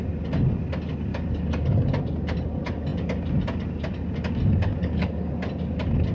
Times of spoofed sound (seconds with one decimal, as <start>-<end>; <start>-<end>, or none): 1.1-2.0; 4.8-5.3